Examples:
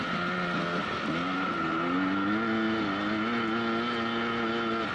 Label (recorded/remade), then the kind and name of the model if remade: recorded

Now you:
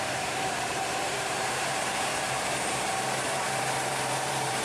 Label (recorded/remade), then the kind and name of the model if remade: remade, vocoder, BigVGAN v2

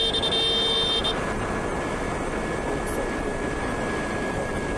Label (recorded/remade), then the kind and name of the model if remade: recorded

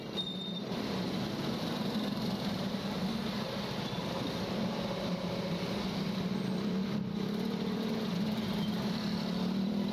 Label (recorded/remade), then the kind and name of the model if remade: remade, vocoder, BigVGAN v2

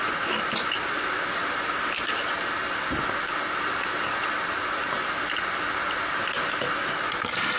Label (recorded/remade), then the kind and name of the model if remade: recorded